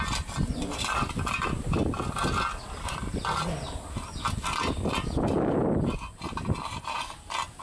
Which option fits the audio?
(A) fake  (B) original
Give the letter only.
B